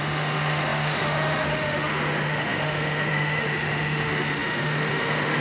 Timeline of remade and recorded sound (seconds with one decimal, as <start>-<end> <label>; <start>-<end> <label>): 0.0-5.4 remade